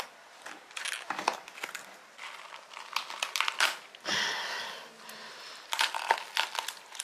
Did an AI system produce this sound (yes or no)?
no